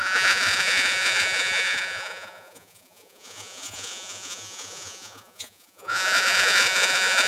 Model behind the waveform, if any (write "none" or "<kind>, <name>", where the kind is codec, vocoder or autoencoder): vocoder, Vocos